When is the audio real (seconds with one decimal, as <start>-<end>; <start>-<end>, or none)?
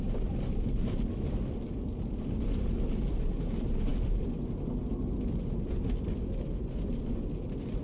0.0-7.8